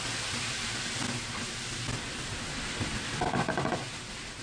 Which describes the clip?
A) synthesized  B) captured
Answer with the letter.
B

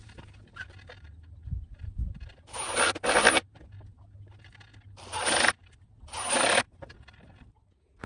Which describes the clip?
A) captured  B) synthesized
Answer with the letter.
A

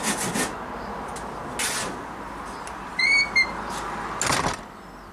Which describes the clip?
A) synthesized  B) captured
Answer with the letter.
B